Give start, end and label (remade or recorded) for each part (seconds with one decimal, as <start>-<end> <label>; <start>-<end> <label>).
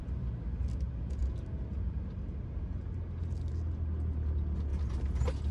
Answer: 0.0-5.5 recorded